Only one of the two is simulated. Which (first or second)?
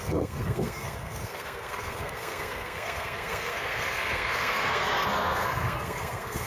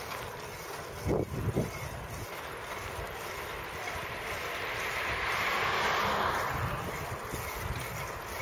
first